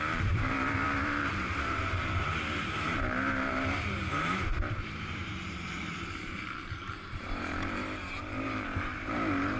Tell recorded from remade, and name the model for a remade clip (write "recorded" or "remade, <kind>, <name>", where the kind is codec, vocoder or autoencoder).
remade, vocoder, BigVGAN v2